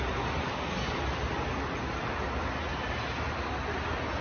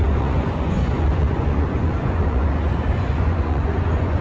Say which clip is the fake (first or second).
second